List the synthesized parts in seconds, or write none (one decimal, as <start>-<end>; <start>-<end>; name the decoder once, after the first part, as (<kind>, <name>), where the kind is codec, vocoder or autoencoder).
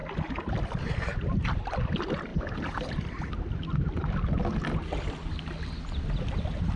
none